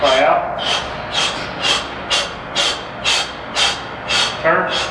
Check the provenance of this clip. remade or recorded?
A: recorded